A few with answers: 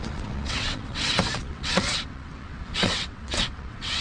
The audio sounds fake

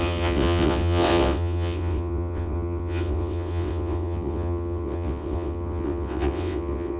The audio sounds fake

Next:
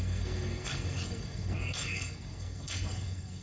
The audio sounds fake